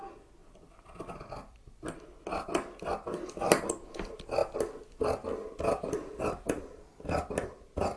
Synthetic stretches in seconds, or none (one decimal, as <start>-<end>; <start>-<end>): 0.4-2.4